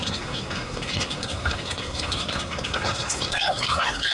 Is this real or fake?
fake